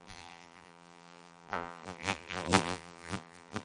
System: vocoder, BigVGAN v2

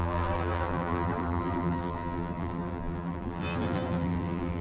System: vocoder, BigVGAN v2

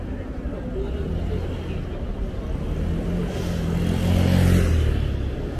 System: none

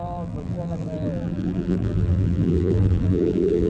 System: vocoder, BigVGAN v2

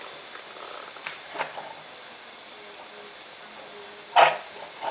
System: none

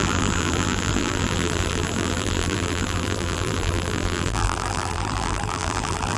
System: vocoder, BigVGAN v2